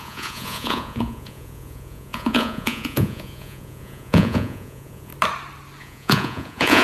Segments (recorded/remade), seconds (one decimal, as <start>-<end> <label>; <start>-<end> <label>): 0.0-5.1 remade; 5.1-5.8 recorded; 5.8-6.8 remade

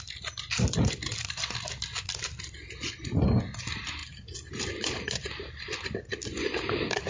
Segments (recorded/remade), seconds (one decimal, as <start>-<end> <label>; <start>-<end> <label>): 0.0-7.1 recorded

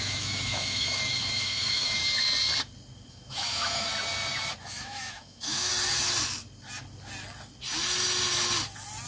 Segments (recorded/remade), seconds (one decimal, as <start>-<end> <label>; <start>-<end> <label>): 0.0-2.0 remade; 2.0-3.1 recorded; 3.1-3.9 remade; 3.9-4.6 recorded; 4.6-5.7 remade; 5.7-9.1 recorded

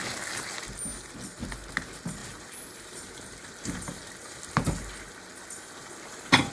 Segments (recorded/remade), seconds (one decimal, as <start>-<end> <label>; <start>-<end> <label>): 0.0-2.2 recorded; 2.2-4.1 remade; 4.1-6.5 recorded

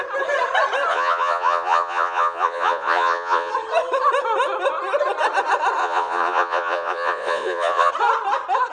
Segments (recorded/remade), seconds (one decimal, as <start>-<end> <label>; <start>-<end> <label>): 0.0-0.9 recorded; 0.9-3.5 remade; 3.5-5.8 recorded; 5.8-7.9 remade; 7.9-8.7 recorded

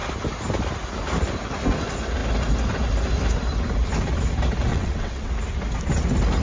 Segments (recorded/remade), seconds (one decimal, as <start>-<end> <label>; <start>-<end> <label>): 0.0-4.7 recorded; 4.7-5.3 remade; 5.3-6.4 recorded

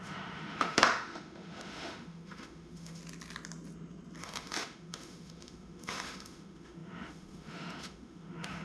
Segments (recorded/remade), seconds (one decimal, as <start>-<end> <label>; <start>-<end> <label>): 0.0-3.0 remade; 3.0-4.2 recorded; 4.2-8.6 remade